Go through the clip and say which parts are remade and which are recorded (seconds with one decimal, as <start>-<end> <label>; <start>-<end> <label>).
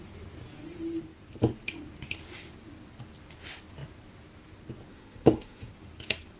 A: 0.0-4.9 recorded; 4.9-5.7 remade; 5.7-6.4 recorded